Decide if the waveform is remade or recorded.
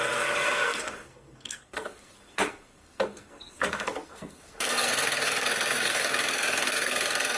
remade